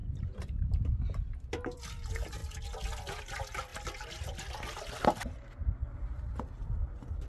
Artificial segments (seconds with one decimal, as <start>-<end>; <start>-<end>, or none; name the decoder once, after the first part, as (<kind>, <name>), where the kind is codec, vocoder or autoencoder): 0.0-1.8 (vocoder, BigVGAN v2)